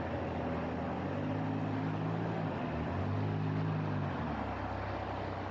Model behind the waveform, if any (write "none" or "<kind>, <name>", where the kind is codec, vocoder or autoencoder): none